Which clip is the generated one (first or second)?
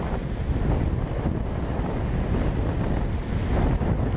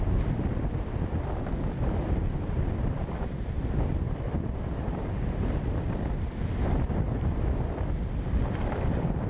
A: second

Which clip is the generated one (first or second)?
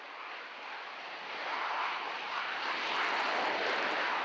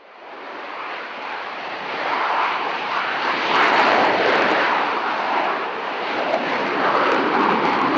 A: second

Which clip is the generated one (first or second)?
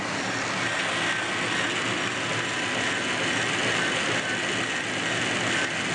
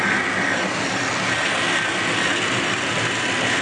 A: second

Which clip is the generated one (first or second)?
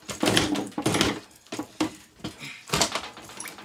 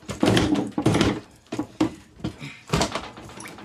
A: second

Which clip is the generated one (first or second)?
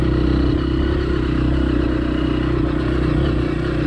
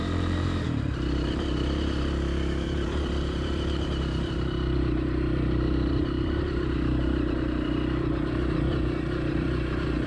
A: second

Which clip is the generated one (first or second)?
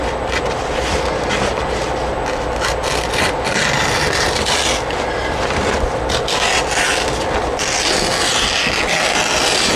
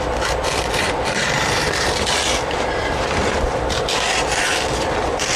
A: second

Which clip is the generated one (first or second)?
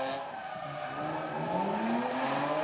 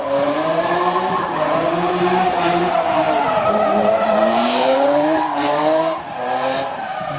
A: second